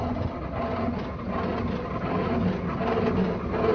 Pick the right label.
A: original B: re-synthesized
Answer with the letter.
A